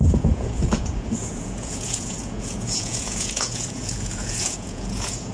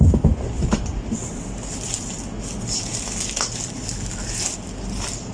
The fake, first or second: first